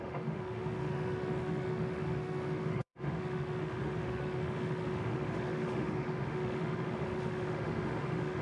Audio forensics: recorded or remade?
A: remade